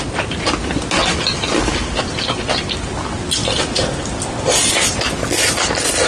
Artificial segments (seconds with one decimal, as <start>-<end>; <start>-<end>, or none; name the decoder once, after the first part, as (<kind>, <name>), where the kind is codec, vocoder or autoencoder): none